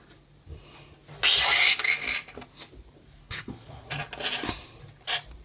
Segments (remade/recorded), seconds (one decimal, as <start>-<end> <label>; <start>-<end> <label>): 0.0-3.2 recorded; 3.2-3.8 remade; 3.8-5.4 recorded